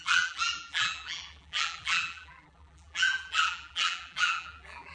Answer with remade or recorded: remade